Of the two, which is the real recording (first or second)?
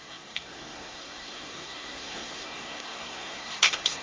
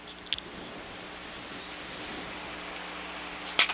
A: second